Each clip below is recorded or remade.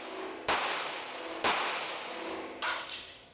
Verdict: recorded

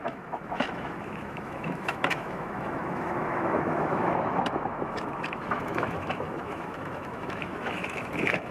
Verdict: remade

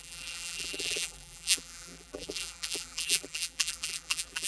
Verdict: remade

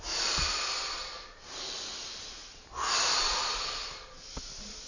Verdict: recorded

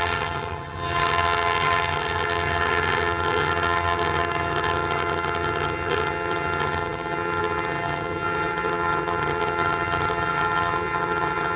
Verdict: remade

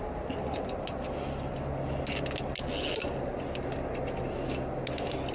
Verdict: recorded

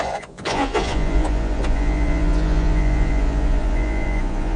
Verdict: remade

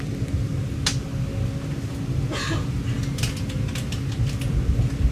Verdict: recorded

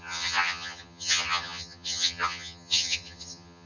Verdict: remade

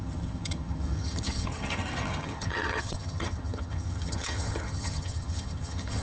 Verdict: remade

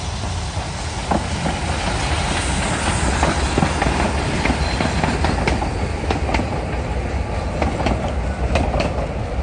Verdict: recorded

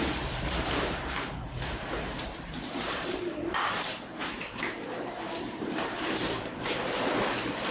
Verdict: remade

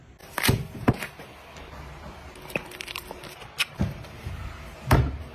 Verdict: recorded